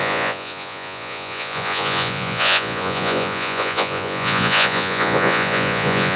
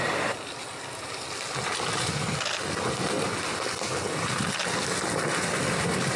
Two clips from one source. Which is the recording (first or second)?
second